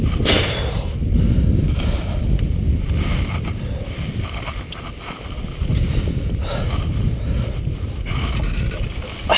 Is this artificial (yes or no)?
no